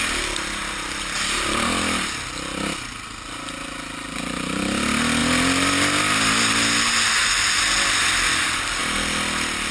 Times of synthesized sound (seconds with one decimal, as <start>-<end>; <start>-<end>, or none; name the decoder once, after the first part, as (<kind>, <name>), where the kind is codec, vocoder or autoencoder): none